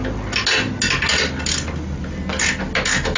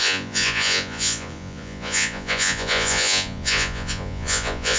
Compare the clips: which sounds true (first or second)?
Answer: first